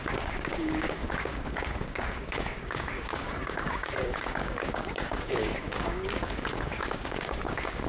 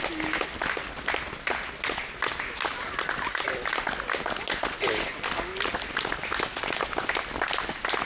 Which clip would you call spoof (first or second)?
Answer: first